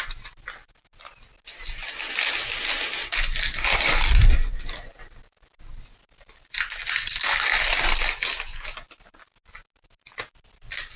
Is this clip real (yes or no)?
yes